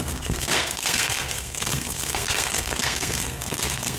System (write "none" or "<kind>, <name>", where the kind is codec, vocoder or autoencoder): codec, SNAC